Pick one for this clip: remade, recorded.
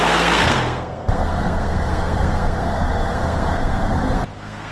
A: remade